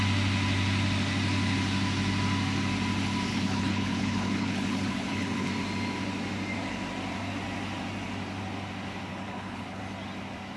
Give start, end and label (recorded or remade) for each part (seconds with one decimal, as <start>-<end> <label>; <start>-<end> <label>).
0.0-3.3 recorded; 3.3-5.5 remade; 5.5-9.1 recorded; 9.1-9.8 remade; 9.8-10.6 recorded